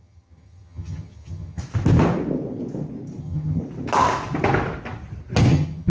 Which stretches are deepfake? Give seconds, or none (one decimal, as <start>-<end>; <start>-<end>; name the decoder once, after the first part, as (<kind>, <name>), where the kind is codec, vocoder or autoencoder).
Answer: 0.0-1.6 (vocoder, HiFi-GAN); 3.2-3.6; 5.5-5.9